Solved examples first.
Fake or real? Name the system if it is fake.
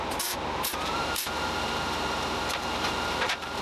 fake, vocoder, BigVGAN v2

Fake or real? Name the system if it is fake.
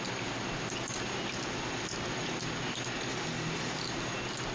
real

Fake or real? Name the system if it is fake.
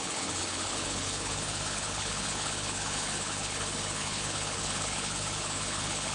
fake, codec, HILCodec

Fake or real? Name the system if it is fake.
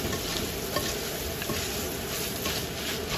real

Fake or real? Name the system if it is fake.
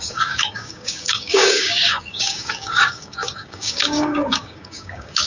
fake, codec, DAC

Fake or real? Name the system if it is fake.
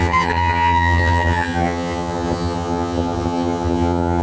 fake, vocoder, HiFi-GAN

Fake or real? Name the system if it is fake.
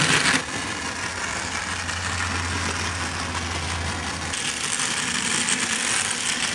real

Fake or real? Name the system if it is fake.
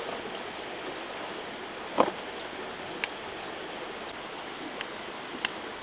real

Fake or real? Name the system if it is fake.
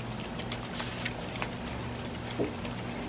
fake, vocoder, BigVGAN v2